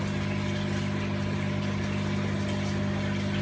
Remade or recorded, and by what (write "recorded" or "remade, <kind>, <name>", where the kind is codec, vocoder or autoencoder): recorded